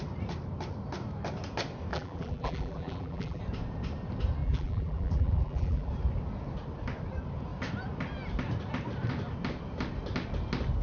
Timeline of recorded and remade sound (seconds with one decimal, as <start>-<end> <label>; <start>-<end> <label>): 0.0-1.9 recorded; 1.9-3.4 remade; 3.4-4.4 recorded; 4.4-5.9 remade; 5.9-10.8 recorded